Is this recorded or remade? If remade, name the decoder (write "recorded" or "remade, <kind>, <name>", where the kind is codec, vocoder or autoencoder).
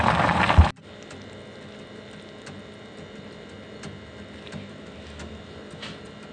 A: recorded